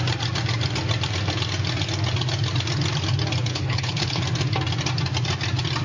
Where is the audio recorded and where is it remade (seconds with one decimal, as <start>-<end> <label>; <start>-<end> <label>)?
0.0-3.5 recorded; 3.5-4.2 remade; 4.2-5.8 recorded